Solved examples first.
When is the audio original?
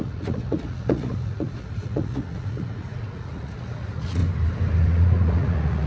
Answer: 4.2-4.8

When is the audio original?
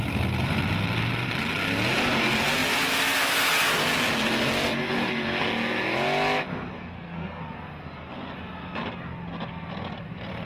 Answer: 0.0-6.8; 7.4-10.5